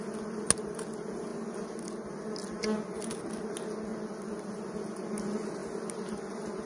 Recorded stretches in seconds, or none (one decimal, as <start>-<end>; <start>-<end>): 0.0-3.9; 4.5-6.7